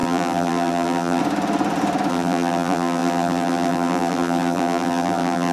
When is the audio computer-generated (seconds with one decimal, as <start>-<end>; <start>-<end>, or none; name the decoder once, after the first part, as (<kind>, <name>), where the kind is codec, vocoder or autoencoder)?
0.0-1.2 (vocoder, BigVGAN v2); 2.1-5.5